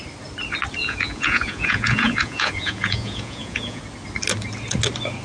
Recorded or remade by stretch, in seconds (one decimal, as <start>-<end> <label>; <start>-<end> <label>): 0.0-0.8 recorded; 0.8-3.8 remade; 3.8-5.2 recorded